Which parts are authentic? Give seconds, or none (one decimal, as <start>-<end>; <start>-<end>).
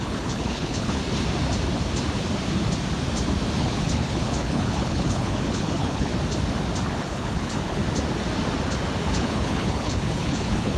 1.0-3.6; 6.1-7.0; 7.8-9.1